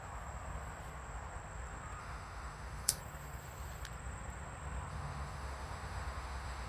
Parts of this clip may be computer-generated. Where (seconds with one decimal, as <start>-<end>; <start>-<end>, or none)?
2.0-3.0; 4.9-6.7